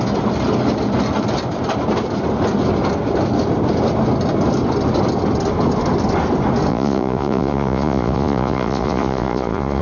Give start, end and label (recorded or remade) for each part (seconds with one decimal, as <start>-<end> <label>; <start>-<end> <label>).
0.0-6.7 recorded; 6.7-9.8 remade